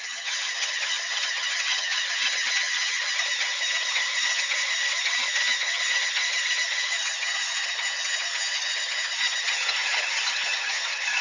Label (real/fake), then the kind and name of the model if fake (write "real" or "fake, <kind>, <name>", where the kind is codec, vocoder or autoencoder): fake, vocoder, HiFi-GAN